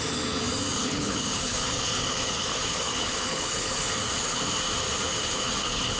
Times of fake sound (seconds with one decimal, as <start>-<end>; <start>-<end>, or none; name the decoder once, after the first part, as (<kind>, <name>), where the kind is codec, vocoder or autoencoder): 0.8-4.4 (codec, HILCodec); 5.1-6.0